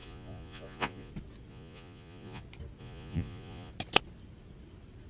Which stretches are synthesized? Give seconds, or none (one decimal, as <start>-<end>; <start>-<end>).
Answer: 0.0-1.1; 1.5-2.4; 2.8-3.7